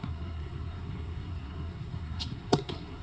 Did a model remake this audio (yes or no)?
yes